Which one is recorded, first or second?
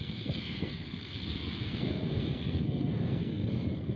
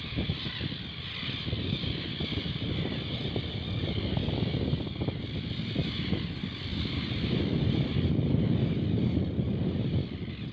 second